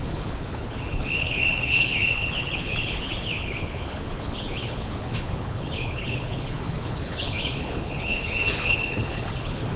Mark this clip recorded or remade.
remade